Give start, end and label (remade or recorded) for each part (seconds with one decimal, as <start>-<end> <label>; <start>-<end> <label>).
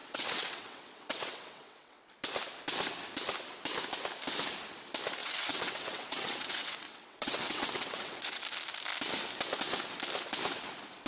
0.0-2.0 remade; 2.0-5.2 recorded; 5.2-8.4 remade; 8.4-11.1 recorded